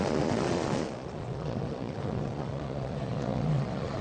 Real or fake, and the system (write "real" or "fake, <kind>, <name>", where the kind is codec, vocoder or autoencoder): fake, vocoder, Vocos